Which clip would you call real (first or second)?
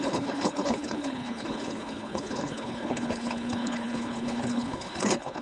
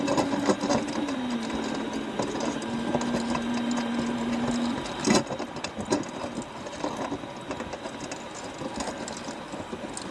second